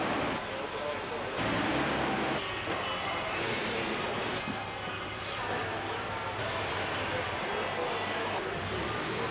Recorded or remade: recorded